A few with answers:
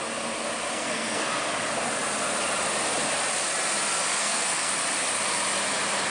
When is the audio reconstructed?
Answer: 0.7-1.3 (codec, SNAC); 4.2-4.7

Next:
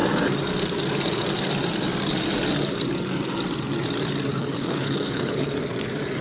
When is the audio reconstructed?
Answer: 4.4-5.5 (codec, HILCodec)

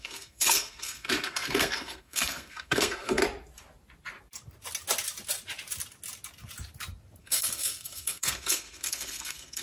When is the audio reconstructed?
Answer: 0.0-3.2 (codec, SNAC); 7.2-9.6

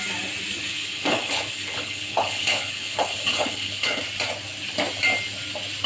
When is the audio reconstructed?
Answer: 0.7-4.0 (codec, HILCodec)